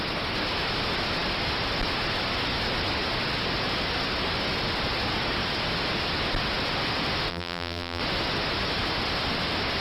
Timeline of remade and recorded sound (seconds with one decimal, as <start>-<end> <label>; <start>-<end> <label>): 0.0-7.3 recorded; 7.3-8.0 remade; 8.0-9.8 recorded